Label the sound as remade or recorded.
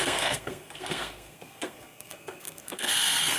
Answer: remade